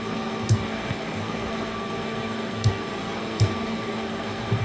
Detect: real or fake fake